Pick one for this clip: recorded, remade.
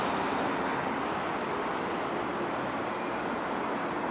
recorded